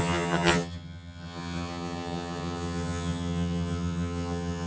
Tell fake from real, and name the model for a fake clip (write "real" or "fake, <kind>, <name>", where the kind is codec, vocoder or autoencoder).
fake, vocoder, HiFi-GAN